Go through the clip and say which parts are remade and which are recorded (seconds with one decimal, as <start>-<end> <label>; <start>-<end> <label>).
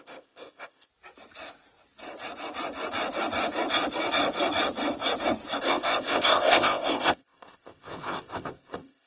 0.0-0.9 remade; 0.9-5.6 recorded; 5.6-9.1 remade